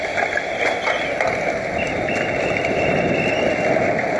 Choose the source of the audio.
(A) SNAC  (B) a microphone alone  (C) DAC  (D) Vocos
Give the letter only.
B